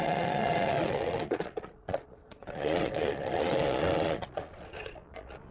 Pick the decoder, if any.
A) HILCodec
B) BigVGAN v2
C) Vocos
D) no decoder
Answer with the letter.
C